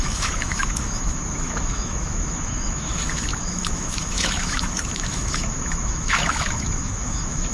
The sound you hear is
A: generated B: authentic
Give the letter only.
A